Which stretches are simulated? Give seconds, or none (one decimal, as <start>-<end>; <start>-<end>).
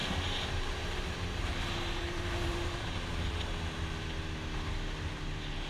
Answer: 0.0-3.4